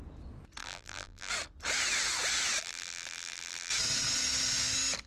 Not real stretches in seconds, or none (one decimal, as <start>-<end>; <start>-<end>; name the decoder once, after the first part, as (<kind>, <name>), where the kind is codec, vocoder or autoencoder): 0.6-1.3 (vocoder, BigVGAN v2); 2.6-3.7

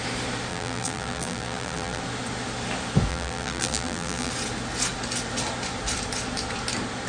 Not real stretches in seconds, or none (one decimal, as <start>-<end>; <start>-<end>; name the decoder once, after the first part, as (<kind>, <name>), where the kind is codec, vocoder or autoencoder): 0.5-2.0 (vocoder, BigVGAN v2); 3.1-4.3

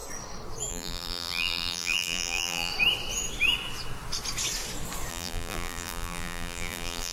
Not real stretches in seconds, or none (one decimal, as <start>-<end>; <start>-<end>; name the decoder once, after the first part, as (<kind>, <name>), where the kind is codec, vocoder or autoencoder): 0.7-2.7 (vocoder, BigVGAN v2); 5.1-7.1

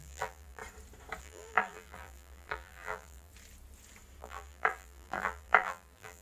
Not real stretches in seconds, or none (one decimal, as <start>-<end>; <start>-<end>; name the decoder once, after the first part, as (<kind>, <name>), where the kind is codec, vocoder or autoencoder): 0.0-0.6 (vocoder, BigVGAN v2); 1.2-3.3; 4.2-6.2

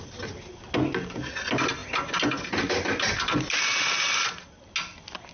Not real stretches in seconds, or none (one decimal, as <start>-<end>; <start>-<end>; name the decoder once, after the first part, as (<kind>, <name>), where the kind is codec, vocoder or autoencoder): none

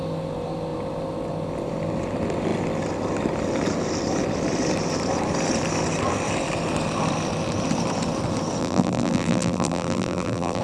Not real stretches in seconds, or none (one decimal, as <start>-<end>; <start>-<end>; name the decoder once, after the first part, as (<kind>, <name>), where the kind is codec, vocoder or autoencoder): 8.6-10.6 (vocoder, BigVGAN v2)